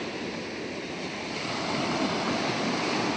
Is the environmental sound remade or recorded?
recorded